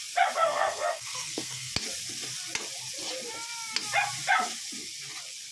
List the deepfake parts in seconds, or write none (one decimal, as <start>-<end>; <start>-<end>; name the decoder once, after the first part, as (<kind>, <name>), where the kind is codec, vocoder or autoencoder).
0.4-1.7 (codec, SNAC)